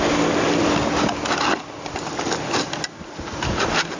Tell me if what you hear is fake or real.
real